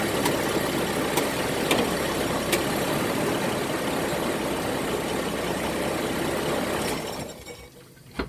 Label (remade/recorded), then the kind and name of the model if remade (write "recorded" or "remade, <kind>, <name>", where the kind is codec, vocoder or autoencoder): recorded